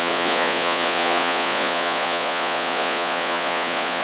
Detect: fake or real fake